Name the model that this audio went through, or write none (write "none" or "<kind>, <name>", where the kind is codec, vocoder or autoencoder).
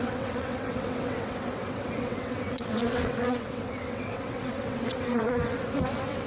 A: vocoder, WaveNeXt